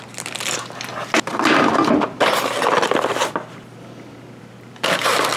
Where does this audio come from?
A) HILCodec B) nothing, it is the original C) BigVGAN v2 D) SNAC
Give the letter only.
B